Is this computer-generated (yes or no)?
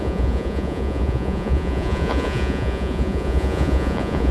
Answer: yes